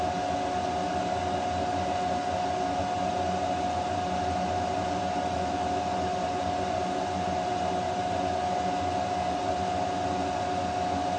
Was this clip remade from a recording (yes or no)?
no